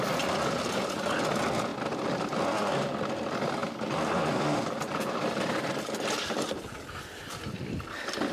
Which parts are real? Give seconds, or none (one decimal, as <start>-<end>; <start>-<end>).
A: 0.0-8.3